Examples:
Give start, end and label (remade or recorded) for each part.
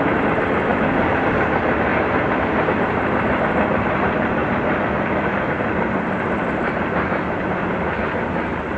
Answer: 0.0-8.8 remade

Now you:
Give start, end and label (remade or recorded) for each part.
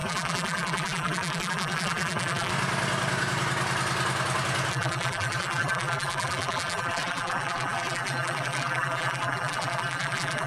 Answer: 0.0-2.5 remade; 2.5-4.7 recorded; 4.7-10.5 remade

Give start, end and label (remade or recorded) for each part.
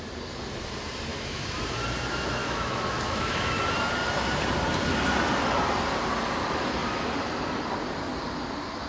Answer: 0.0-1.1 recorded; 1.1-1.6 remade; 1.6-2.4 recorded; 2.4-3.6 remade; 3.6-8.9 recorded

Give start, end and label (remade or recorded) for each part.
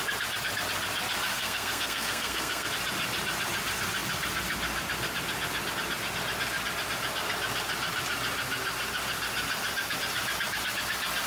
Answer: 0.0-1.3 recorded; 1.3-2.7 remade; 2.7-11.3 recorded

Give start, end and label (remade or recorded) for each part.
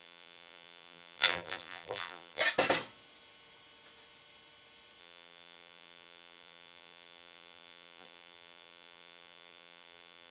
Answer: 0.0-2.4 remade; 2.4-5.0 recorded; 5.0-10.3 remade